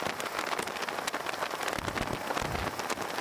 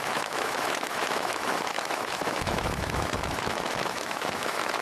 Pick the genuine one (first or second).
first